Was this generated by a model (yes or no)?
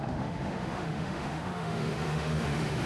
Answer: yes